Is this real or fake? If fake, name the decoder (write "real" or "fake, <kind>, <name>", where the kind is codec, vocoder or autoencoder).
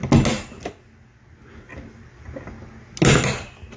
real